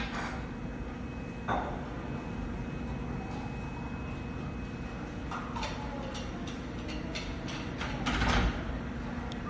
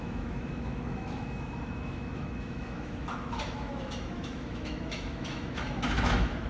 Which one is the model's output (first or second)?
second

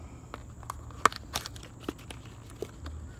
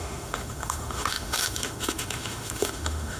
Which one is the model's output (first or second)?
second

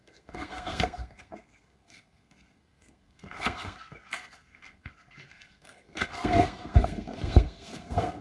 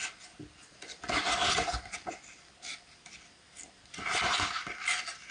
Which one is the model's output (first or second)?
first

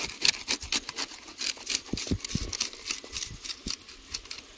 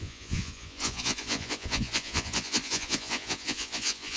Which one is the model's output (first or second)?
second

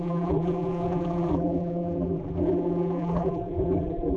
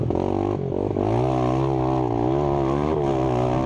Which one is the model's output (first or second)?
first